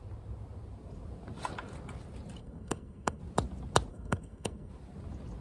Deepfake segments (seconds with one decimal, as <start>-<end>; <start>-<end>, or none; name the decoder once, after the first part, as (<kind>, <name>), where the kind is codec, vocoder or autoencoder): 2.4-3.2 (codec, SNAC); 3.9-4.7